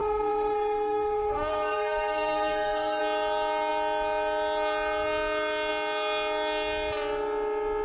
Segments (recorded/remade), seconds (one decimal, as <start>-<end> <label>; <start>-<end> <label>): 0.0-3.0 remade; 3.0-7.8 recorded